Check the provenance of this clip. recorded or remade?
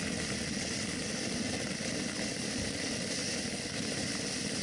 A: recorded